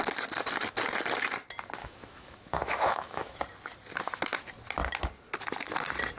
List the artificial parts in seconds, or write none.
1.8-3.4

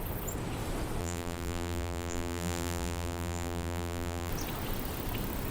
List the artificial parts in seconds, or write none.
1.0-4.3